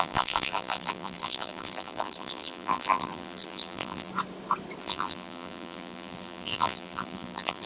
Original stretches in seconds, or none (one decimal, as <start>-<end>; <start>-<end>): 4.1-4.8